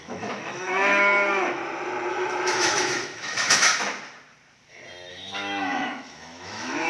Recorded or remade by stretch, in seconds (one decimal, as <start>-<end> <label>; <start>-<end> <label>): 0.0-1.6 remade; 1.6-2.1 recorded; 2.1-3.7 remade; 3.7-5.1 recorded; 5.1-6.9 remade